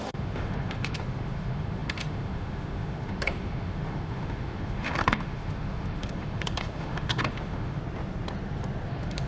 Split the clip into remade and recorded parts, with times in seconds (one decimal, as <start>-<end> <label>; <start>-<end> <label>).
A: 0.0-7.8 remade; 7.8-8.9 recorded; 8.9-9.3 remade